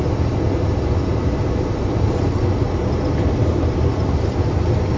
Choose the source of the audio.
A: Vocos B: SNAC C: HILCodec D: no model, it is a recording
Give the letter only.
D